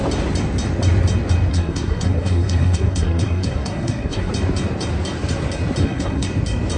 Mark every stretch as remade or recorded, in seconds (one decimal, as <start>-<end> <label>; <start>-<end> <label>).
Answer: 0.0-1.5 recorded; 1.5-4.3 remade; 4.3-5.8 recorded; 5.8-6.3 remade; 6.3-6.8 recorded